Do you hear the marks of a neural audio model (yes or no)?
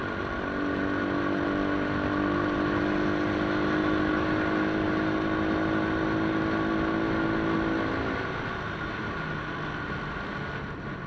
no